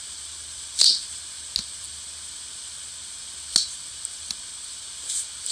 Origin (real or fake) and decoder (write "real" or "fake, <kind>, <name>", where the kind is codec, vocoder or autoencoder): real